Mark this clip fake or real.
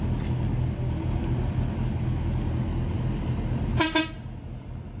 real